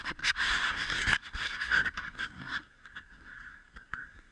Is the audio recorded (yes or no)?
no